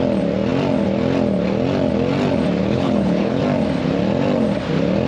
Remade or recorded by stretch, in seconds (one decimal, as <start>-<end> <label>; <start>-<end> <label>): 0.0-2.6 recorded; 2.6-3.4 remade; 3.4-5.1 recorded